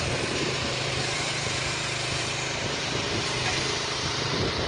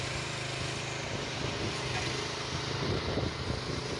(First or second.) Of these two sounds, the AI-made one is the first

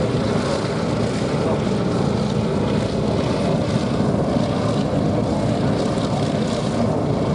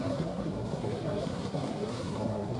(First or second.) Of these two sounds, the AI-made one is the second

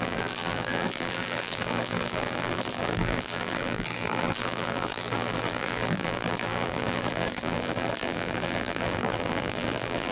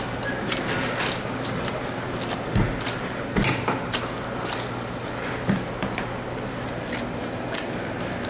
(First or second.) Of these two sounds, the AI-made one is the first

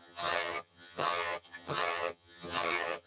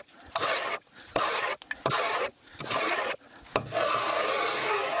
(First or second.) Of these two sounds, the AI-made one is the first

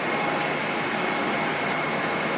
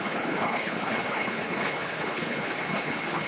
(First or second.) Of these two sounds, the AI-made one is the second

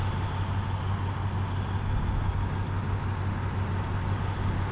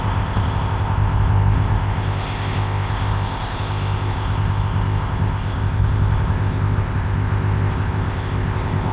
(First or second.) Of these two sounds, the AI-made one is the second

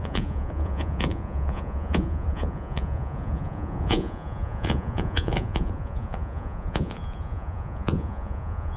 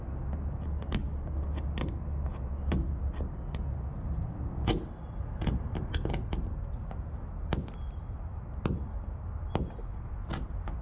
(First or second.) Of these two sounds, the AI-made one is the first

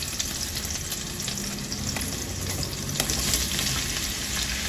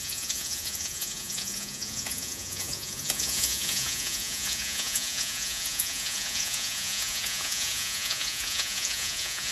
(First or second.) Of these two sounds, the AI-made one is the second